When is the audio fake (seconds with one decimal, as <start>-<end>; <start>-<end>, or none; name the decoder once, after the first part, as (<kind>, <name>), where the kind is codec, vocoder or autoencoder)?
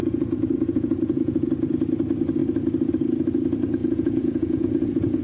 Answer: 0.0-1.5 (vocoder, Vocos); 3.8-5.2